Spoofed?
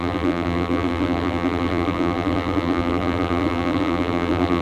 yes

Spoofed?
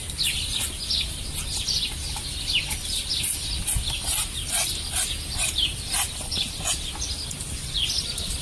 no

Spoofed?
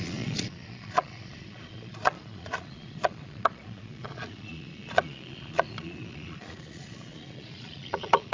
yes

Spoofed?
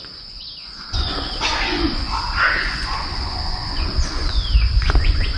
yes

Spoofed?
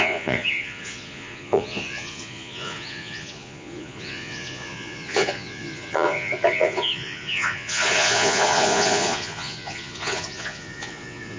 yes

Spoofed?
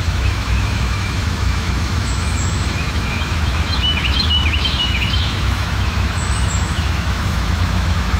yes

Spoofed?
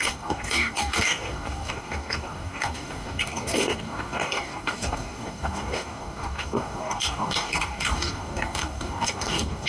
yes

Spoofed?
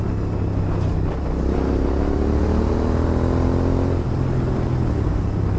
no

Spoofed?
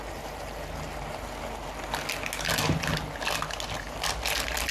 no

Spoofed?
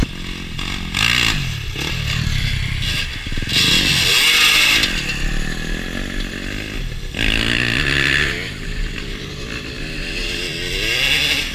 no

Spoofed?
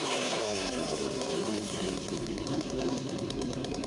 yes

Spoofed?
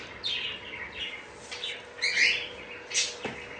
no